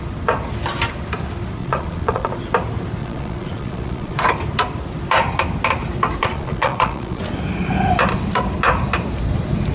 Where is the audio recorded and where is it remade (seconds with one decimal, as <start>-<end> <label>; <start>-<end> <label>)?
0.0-1.6 recorded; 1.6-2.3 remade; 2.3-3.0 recorded; 3.0-4.2 remade; 4.2-6.2 recorded; 6.2-7.2 remade; 7.2-9.7 recorded